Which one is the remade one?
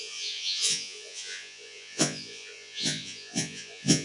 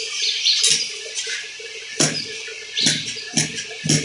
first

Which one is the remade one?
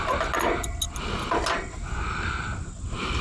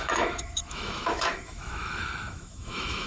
second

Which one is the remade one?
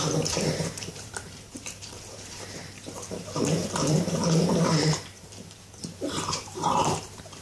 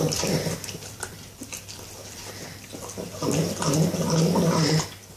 first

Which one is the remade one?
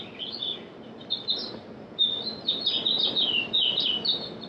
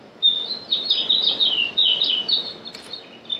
second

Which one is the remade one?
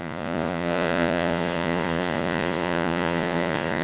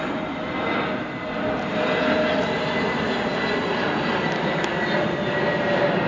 first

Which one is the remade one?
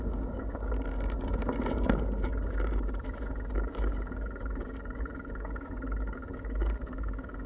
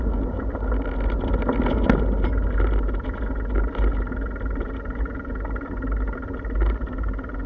first